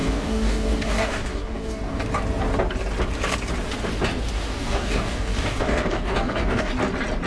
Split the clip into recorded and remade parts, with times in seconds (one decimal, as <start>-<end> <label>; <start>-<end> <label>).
0.0-2.0 remade; 2.0-4.5 recorded; 4.5-6.7 remade; 6.7-7.3 recorded